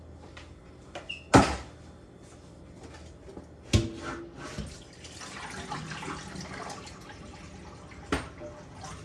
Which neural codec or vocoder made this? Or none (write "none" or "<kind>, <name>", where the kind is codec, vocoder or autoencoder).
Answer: none